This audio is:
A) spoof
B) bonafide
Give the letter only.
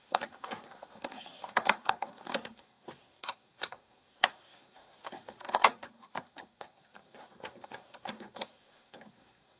A